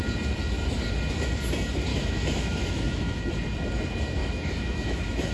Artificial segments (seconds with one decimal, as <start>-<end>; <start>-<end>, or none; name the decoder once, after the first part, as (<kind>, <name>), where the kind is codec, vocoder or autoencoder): 1.9-3.2 (autoencoder, DAC-VAE); 4.2-5.3